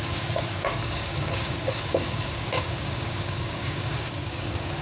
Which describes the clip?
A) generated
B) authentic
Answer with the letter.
A